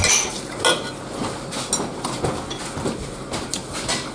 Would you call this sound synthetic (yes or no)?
no